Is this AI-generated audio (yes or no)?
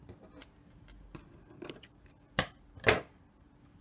no